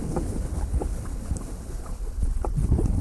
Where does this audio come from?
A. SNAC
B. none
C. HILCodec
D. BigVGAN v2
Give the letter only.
C